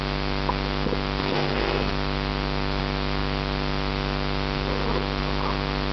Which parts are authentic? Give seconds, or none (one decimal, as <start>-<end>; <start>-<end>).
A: 0.0-1.2; 1.9-5.9